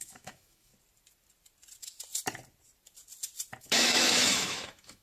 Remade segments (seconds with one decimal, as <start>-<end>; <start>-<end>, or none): 0.0-0.7; 3.6-5.0